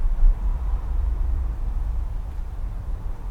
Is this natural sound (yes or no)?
no